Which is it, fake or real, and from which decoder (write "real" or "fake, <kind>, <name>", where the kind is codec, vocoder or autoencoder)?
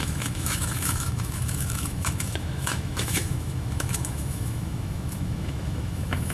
fake, autoencoder, DAC-VAE